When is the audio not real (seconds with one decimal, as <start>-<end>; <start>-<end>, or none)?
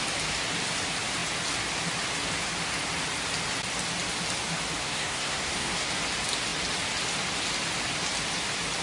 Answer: 4.8-5.9